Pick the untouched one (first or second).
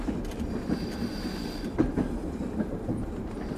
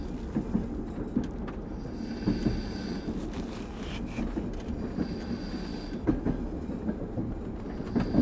second